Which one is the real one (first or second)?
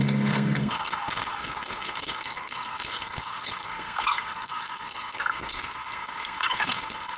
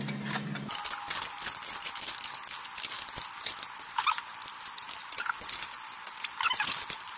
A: second